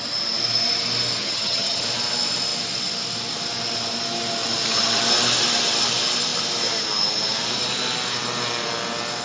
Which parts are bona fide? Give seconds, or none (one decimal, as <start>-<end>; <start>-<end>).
0.0-1.2; 1.8-9.2

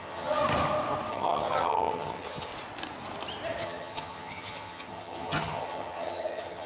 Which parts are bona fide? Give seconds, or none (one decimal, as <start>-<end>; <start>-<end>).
0.4-1.1; 2.5-3.6

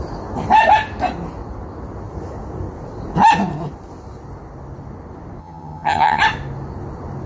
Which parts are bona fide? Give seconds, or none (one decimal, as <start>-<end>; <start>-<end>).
0.0-5.4; 6.2-7.3